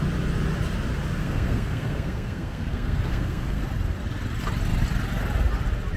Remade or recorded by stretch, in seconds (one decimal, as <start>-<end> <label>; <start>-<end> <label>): 0.0-1.2 recorded; 1.2-3.6 remade; 3.6-6.0 recorded